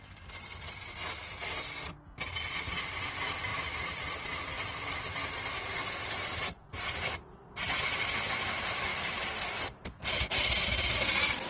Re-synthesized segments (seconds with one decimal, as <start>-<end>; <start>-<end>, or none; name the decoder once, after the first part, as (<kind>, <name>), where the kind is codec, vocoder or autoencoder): 3.5-6.9 (vocoder, BigVGAN v2); 8.9-9.6